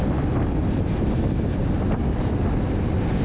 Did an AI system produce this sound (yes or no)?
no